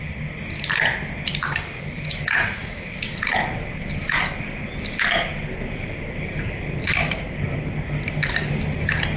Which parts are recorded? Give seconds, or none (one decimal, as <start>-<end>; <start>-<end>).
0.0-9.2